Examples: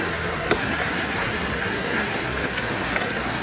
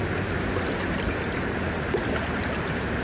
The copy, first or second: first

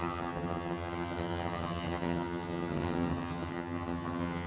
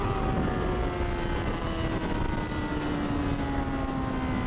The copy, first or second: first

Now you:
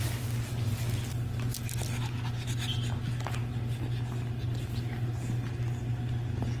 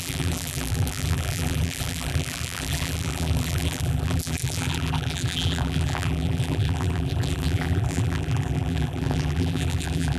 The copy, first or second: second